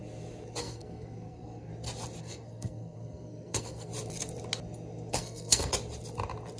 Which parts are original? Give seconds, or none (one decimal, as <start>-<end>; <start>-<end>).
0.0-0.6; 1.7-2.2; 3.9-5.1; 5.7-6.6